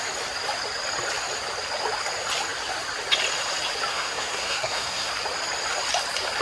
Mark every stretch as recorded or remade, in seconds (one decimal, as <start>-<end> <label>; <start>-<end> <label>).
0.0-3.9 recorded; 3.9-5.1 remade; 5.1-6.4 recorded